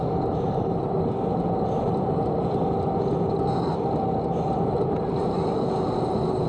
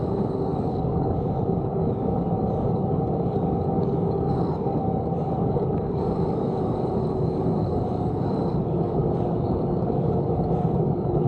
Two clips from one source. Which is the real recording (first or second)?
first